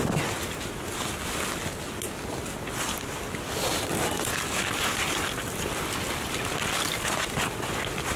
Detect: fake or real real